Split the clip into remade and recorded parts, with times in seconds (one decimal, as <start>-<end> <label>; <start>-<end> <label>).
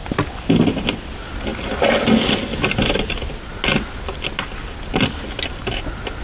0.0-6.2 recorded